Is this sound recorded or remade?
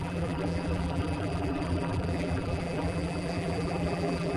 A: remade